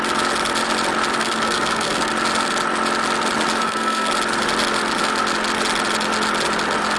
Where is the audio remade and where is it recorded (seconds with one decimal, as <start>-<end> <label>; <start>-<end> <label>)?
0.0-1.2 recorded; 1.2-2.1 remade; 2.1-3.6 recorded; 3.6-4.1 remade; 4.1-7.0 recorded

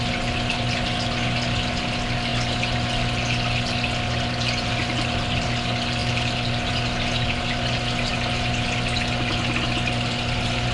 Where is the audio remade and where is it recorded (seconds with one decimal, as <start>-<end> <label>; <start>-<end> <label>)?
0.0-10.7 recorded

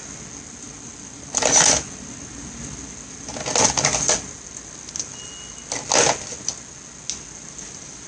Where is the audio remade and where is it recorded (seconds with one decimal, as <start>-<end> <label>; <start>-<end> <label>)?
0.0-8.1 recorded